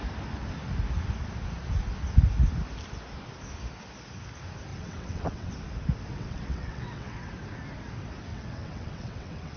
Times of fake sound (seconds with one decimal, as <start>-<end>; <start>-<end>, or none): 4.7-5.5; 6.1-7.3; 8.3-9.6